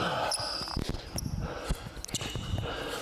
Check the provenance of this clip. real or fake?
real